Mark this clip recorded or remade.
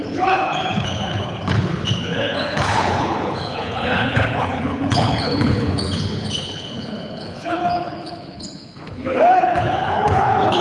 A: remade